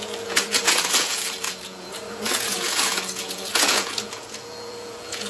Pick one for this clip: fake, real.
fake